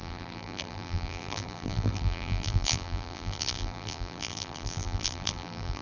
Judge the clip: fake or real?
fake